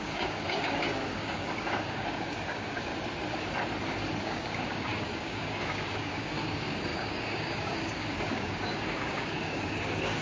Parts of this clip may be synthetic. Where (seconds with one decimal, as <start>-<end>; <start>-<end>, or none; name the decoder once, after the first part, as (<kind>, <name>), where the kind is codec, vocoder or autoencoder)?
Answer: 0.0-2.9 (codec, DAC); 4.2-10.2